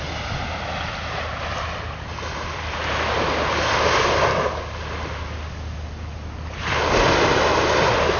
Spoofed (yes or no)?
no